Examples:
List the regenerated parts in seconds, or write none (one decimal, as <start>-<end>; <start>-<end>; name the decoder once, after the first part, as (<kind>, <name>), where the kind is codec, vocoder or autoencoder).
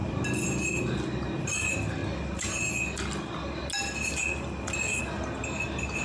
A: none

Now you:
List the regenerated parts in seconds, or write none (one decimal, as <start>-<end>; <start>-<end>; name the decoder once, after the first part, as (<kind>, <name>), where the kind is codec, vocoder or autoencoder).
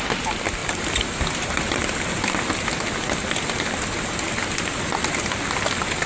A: none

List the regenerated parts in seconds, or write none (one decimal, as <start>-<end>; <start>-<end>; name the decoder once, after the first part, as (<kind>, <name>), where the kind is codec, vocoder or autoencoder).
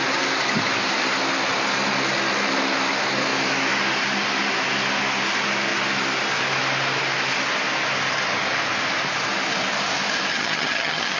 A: 10.3-11.2 (vocoder, HiFi-GAN)